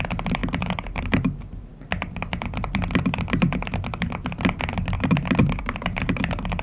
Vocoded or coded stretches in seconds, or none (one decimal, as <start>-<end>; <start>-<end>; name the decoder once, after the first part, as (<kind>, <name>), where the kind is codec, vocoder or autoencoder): 0.0-0.4 (vocoder, BigVGAN v2); 1.0-6.6